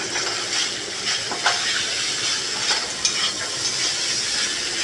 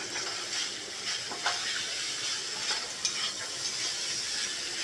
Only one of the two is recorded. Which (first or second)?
first